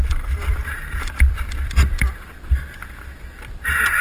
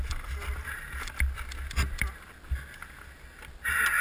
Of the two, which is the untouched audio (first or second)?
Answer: second